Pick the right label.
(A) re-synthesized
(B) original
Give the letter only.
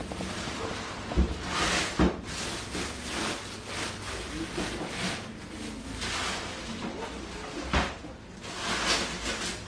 B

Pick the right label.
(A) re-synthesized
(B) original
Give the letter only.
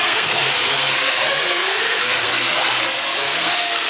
A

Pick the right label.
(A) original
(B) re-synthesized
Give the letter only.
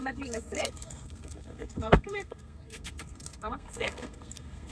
B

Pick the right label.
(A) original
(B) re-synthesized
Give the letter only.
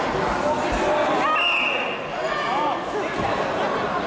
A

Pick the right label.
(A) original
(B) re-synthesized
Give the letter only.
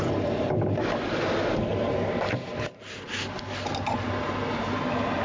A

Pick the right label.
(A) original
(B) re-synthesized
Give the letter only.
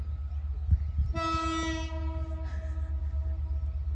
A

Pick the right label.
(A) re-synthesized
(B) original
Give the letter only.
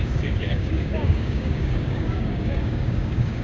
A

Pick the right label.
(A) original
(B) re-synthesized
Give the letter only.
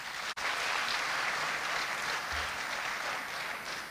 A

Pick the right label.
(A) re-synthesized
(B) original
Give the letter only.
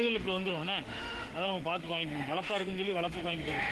A